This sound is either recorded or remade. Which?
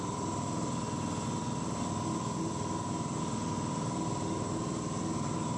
recorded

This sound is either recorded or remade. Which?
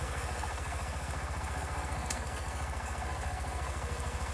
remade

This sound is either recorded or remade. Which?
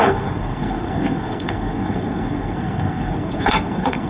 remade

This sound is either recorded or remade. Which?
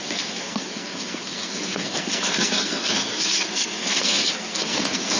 remade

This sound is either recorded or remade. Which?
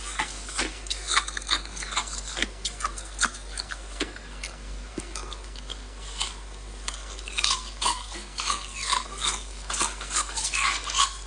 remade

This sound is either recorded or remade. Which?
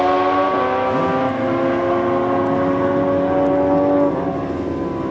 recorded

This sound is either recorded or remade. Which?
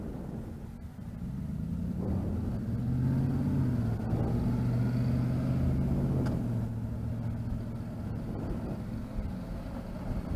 recorded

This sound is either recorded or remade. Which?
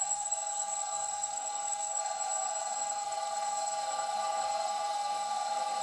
remade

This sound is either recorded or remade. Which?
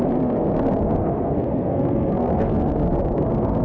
remade